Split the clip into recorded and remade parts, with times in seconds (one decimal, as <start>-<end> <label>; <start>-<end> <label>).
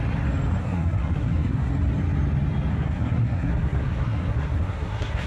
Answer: 0.0-0.6 recorded; 0.6-1.7 remade; 1.7-2.7 recorded; 2.7-5.3 remade